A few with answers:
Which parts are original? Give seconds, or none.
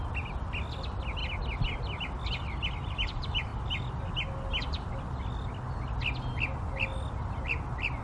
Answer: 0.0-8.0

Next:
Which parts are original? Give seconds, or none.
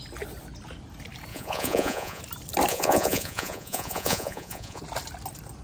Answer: 0.0-1.3; 2.2-2.7; 4.8-5.6